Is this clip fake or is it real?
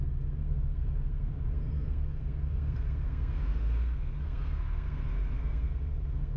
fake